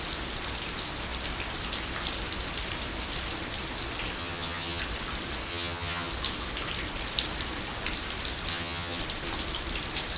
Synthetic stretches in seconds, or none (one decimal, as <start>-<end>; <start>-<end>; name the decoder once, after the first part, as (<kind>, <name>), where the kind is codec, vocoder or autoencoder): 4.2-4.8 (vocoder, HiFi-GAN); 5.5-6.1; 8.5-9.0